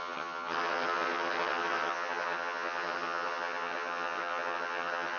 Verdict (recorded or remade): remade